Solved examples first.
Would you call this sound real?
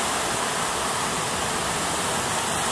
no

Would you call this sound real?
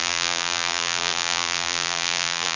no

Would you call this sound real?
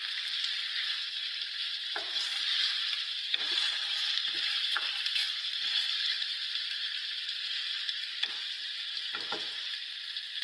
no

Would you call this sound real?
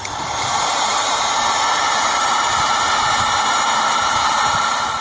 no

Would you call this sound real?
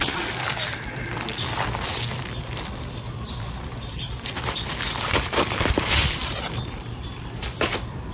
no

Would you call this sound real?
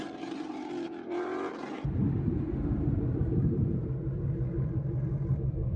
no